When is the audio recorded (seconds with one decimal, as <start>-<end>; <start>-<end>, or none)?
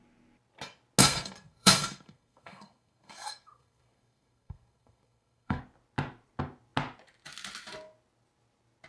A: 0.0-1.0; 5.6-8.9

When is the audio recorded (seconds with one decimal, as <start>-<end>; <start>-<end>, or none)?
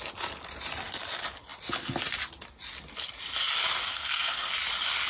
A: 0.0-3.9; 4.5-5.1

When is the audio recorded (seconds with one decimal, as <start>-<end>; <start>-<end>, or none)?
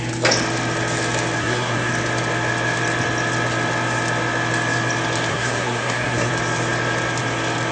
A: 0.0-1.4; 1.9-5.3; 6.3-7.7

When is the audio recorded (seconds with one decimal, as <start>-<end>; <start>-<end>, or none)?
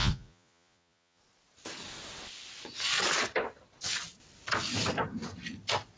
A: 1.2-6.0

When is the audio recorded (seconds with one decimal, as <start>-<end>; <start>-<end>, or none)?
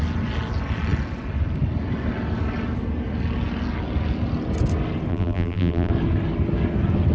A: 0.0-5.1; 5.9-7.1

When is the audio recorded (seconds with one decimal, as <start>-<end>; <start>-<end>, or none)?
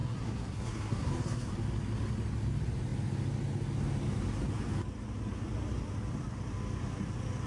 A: 1.5-7.5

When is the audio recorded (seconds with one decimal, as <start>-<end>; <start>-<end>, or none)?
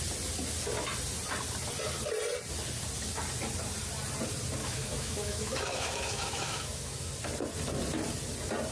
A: 0.0-4.6; 7.1-8.7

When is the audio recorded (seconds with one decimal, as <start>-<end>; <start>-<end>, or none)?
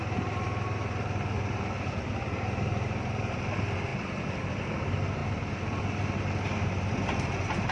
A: 0.0-5.2; 5.8-7.7